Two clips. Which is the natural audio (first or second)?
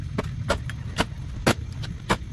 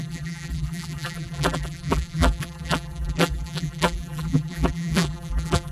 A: first